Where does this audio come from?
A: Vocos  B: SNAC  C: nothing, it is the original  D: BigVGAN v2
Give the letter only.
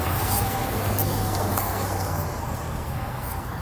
B